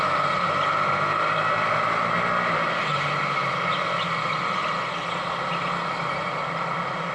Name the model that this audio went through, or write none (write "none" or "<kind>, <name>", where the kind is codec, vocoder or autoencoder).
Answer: none